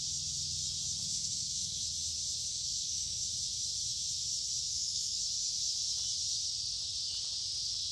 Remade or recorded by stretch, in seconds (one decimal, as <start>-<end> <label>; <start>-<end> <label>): 0.0-1.0 recorded; 1.0-1.8 remade; 1.8-2.5 recorded; 2.5-3.3 remade; 3.3-4.7 recorded; 4.7-5.2 remade; 5.2-7.9 recorded